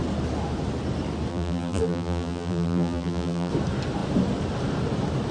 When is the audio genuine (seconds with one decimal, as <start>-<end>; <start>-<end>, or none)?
0.0-1.3; 3.5-5.3